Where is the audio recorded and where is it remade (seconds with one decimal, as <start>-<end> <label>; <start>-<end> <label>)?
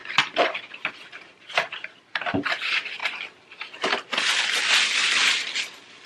0.0-2.6 remade; 2.6-3.0 recorded; 3.0-4.4 remade; 4.4-5.0 recorded; 5.0-6.1 remade